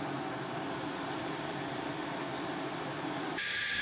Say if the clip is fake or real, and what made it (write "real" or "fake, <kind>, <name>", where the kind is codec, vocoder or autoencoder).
real